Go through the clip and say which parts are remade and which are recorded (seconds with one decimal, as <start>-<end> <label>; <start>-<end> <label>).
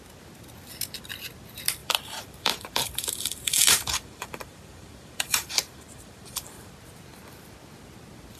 0.0-1.8 recorded; 1.8-6.7 remade; 6.7-8.4 recorded